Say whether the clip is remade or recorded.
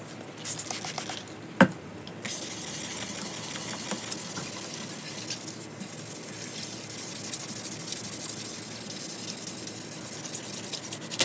recorded